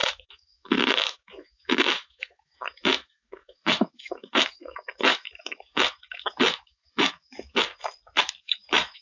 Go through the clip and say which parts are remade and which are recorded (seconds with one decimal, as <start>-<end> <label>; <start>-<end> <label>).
0.0-7.7 remade; 7.7-8.4 recorded; 8.4-9.0 remade